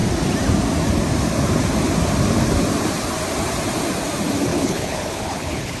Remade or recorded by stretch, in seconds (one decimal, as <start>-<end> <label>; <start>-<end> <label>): 0.0-4.5 recorded; 4.5-5.8 remade